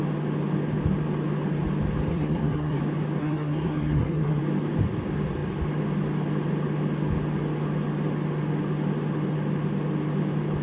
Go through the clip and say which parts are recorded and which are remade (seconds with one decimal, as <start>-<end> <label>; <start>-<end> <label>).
0.0-2.1 recorded; 2.1-2.8 remade; 2.8-3.2 recorded; 3.2-4.4 remade; 4.4-10.6 recorded